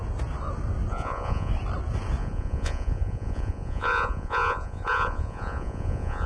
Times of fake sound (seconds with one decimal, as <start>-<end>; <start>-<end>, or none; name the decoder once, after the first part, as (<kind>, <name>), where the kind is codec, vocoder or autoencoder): 0.9-1.5 (vocoder, Vocos); 2.2-6.3